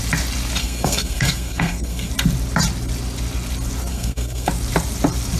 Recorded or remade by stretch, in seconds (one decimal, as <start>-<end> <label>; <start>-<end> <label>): 0.0-0.6 recorded; 0.6-2.1 remade; 2.1-3.9 recorded; 3.9-4.5 remade; 4.5-5.4 recorded